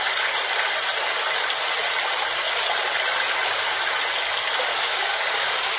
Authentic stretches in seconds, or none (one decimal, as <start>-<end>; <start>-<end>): 0.0-4.7